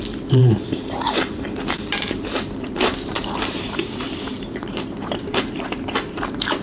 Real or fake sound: fake